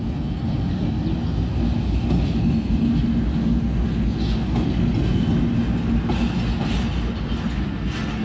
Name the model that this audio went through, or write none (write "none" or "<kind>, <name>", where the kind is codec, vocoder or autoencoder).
none